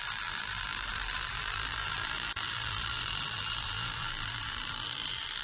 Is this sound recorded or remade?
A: remade